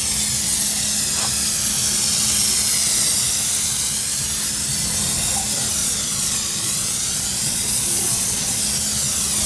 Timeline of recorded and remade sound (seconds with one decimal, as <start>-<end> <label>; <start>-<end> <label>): 0.0-5.8 recorded; 5.8-8.6 remade; 8.6-9.5 recorded